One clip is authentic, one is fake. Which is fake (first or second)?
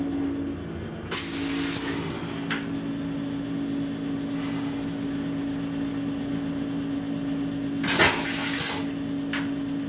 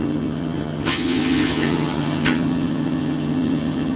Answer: second